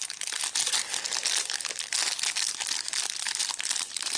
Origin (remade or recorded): recorded